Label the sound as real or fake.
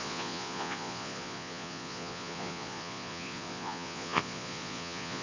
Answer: fake